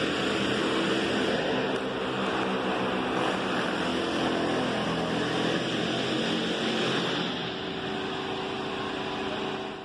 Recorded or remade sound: recorded